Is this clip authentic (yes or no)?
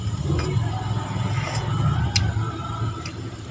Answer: yes